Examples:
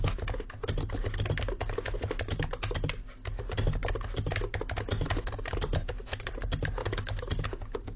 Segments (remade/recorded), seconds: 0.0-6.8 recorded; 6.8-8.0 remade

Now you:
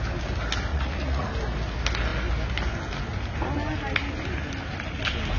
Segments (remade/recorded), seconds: 0.0-0.7 recorded; 0.7-1.3 remade; 1.3-5.4 recorded

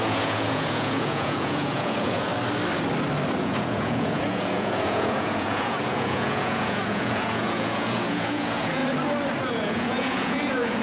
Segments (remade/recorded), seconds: 0.0-2.3 remade; 2.3-3.4 recorded; 3.4-8.8 remade; 8.8-9.4 recorded; 9.4-10.8 remade

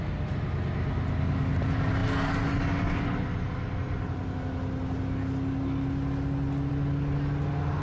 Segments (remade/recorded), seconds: 0.0-7.8 recorded